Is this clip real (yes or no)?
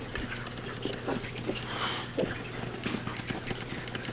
yes